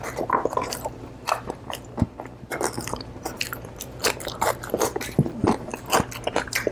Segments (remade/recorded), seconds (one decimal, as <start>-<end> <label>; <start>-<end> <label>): 0.0-5.7 remade; 5.7-6.3 recorded; 6.3-6.7 remade